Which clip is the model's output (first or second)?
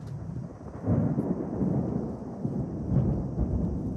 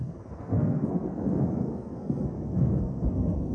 second